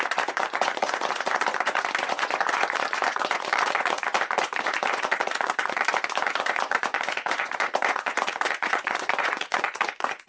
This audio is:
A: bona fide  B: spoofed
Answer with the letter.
B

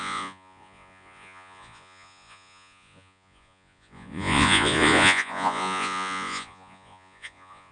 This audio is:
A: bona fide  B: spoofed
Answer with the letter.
B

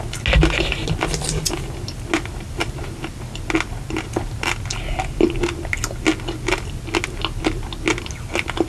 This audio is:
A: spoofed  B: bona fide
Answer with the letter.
B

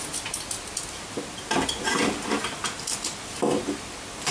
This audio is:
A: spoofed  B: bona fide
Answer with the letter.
B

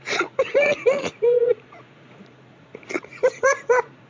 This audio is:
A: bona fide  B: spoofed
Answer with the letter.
B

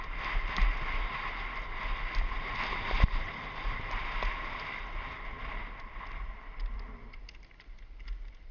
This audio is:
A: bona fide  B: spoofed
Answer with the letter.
A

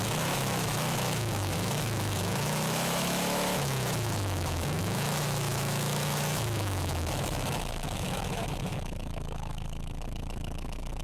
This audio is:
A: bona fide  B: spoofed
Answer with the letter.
B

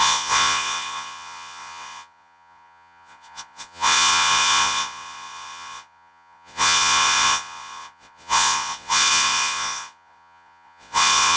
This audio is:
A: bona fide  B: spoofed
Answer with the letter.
B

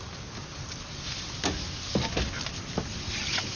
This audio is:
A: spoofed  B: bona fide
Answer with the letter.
B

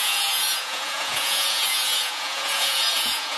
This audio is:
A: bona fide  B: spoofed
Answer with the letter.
B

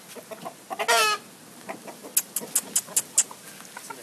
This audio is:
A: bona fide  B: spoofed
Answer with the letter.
A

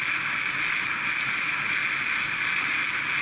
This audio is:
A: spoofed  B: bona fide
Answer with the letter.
B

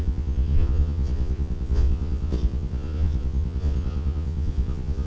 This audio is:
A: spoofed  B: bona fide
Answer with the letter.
A